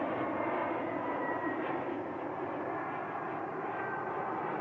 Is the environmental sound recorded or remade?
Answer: recorded